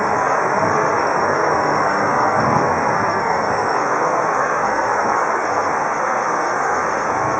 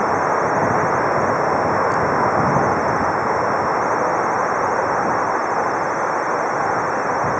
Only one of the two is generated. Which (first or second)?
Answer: first